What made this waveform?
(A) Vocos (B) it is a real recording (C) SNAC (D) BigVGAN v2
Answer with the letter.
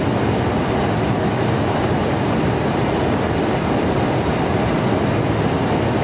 B